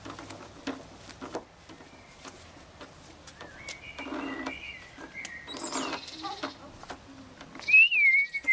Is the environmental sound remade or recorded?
recorded